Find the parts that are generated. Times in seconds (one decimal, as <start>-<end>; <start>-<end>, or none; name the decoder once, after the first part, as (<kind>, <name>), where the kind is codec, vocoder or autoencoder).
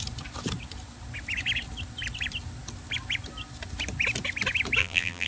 4.8-5.3 (vocoder, BigVGAN v2)